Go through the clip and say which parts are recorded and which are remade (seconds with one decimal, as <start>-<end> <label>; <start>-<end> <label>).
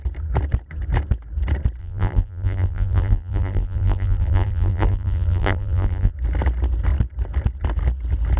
0.0-1.8 recorded; 1.8-6.1 remade; 6.1-8.4 recorded